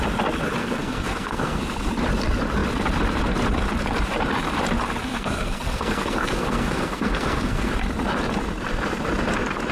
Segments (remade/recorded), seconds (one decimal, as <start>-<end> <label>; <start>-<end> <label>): 0.0-0.6 recorded; 0.6-1.6 remade; 1.6-5.1 recorded; 5.1-7.7 remade; 7.7-9.7 recorded